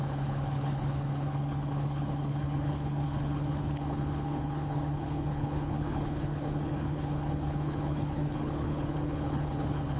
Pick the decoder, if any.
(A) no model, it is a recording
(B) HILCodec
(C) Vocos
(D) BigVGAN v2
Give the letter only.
B